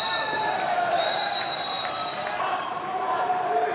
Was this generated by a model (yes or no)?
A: yes